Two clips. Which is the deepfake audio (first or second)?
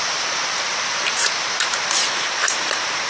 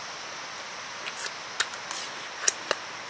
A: first